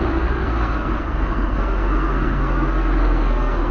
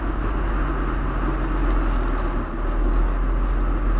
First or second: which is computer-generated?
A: first